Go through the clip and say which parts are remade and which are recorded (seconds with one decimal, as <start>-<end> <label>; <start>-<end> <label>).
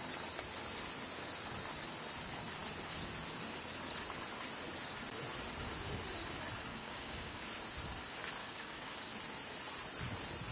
0.0-6.7 recorded; 6.7-7.4 remade; 7.4-8.4 recorded; 8.4-9.0 remade; 9.0-10.5 recorded